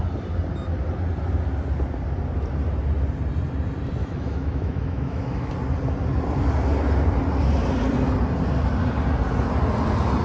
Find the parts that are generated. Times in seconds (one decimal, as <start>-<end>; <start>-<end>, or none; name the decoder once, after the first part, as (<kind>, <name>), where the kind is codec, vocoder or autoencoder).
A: 4.0-5.5 (autoencoder, DAC-VAE)